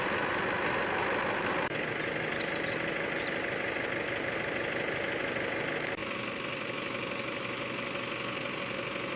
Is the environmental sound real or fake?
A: real